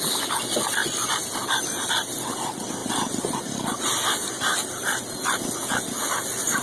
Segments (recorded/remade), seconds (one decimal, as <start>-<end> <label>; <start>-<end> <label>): 0.0-2.8 recorded; 2.8-5.0 remade; 5.0-6.6 recorded